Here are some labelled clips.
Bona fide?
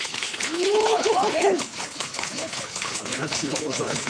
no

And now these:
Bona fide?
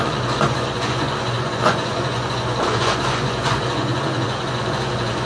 no